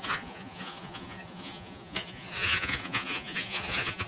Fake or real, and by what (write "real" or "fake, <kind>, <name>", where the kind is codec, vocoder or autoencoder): fake, vocoder, Vocos